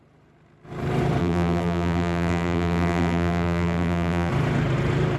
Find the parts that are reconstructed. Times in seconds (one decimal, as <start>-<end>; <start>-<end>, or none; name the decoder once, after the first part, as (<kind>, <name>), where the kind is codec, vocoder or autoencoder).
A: 1.2-4.3 (vocoder, BigVGAN v2)

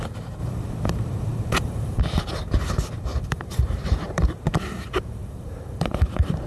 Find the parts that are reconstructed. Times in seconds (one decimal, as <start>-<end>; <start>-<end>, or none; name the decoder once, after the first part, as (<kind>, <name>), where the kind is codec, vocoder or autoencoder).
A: 0.4-2.0 (vocoder, BigVGAN v2); 3.1-6.5

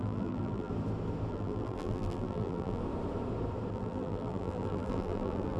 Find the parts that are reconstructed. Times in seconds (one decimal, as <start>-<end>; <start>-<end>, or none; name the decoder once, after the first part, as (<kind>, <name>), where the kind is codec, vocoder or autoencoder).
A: 0.0-0.7 (vocoder, BigVGAN v2); 1.3-2.8; 3.7-5.6

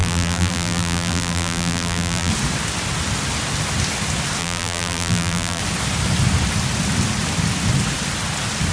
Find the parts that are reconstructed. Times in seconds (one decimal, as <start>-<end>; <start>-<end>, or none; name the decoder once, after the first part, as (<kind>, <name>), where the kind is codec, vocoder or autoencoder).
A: 0.0-2.3 (vocoder, BigVGAN v2); 4.4-5.6

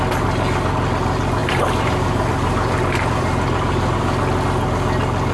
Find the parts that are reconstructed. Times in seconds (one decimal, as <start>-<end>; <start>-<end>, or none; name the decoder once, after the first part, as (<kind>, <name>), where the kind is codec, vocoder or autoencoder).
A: 1.4-4.0 (vocoder, BigVGAN v2)